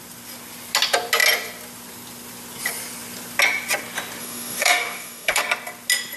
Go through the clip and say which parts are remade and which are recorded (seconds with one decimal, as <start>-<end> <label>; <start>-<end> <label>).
0.0-4.2 recorded; 4.2-5.4 remade; 5.4-6.2 recorded